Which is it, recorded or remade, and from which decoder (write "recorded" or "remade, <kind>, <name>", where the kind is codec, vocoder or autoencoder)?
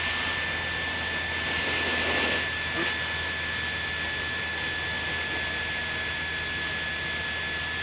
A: recorded